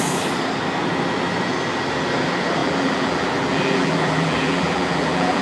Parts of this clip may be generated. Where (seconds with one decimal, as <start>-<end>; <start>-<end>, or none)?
2.6-5.4